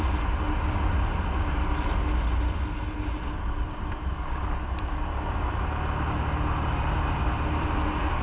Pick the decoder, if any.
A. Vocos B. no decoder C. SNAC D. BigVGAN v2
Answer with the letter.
B